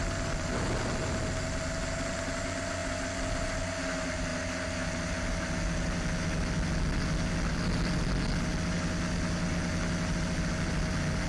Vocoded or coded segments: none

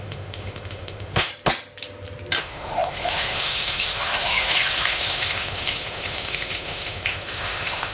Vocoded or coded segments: 0.0-1.3 (autoencoder, DAC-VAE); 2.4-7.9